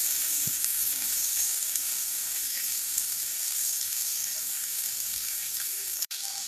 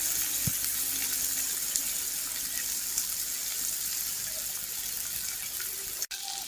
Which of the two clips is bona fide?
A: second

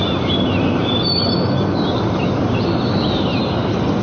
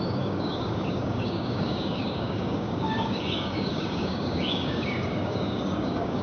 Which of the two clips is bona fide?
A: first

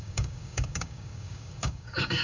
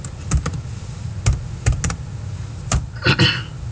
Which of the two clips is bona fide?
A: second